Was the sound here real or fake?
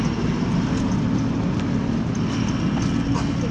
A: real